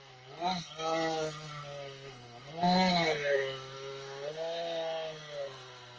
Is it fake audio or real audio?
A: fake